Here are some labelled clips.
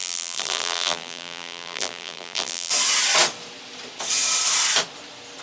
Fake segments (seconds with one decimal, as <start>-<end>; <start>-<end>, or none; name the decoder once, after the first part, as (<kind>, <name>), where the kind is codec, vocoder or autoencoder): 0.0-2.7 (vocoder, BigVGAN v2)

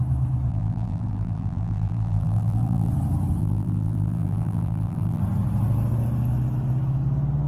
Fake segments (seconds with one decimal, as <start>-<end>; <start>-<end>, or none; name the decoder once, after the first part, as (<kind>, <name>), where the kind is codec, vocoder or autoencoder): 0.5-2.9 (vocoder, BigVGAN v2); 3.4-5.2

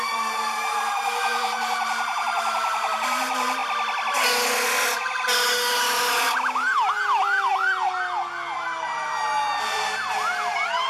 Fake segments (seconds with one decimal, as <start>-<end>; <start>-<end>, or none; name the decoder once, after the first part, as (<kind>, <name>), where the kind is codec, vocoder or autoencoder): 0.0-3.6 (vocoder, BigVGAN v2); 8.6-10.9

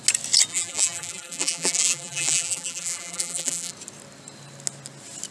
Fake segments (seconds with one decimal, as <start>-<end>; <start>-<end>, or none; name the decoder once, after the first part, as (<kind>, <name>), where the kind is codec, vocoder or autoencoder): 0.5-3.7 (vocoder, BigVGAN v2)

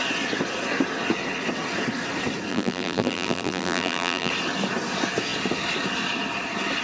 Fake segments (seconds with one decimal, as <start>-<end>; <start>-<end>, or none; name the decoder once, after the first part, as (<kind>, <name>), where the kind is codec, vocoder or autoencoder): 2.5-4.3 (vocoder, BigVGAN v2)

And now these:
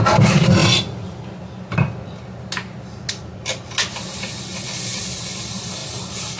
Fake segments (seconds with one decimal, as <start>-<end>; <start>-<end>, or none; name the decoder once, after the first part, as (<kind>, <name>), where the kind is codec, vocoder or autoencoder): none